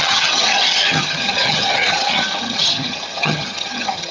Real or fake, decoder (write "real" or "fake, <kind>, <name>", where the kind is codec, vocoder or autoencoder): fake, vocoder, HiFi-GAN